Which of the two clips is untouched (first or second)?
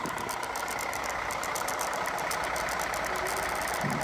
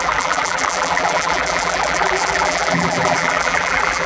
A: first